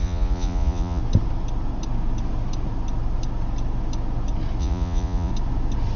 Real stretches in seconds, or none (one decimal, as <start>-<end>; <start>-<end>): 1.0-4.6; 5.3-6.0